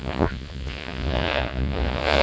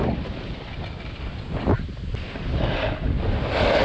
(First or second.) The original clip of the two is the second